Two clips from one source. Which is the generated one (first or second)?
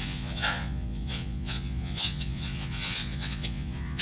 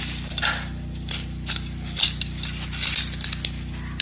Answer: first